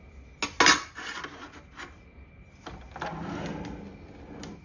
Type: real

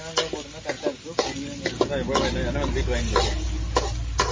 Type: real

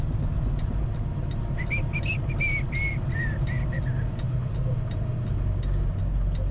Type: real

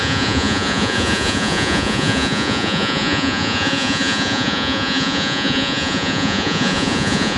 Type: fake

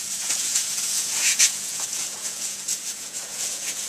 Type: fake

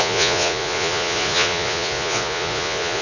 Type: fake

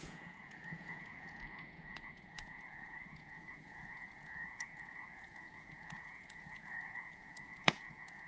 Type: fake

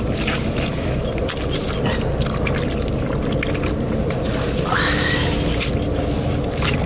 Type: real